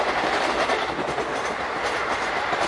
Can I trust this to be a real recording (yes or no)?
yes